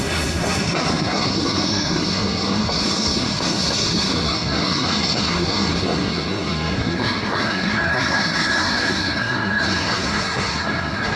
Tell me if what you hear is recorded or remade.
remade